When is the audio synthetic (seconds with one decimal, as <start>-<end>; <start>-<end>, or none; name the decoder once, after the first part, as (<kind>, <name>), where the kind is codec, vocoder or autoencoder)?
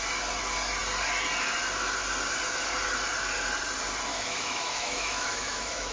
4.1-5.9 (autoencoder, DAC-VAE)